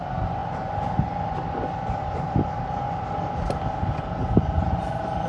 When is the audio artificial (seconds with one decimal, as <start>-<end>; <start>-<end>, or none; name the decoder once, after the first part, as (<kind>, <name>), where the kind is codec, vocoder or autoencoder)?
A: 0.4-3.6 (vocoder, BigVGAN v2); 4.2-5.3